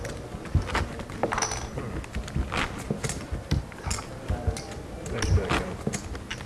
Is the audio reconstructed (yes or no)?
no